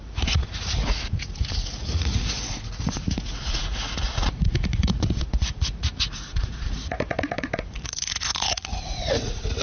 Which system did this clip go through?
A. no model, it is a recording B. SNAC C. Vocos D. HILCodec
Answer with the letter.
C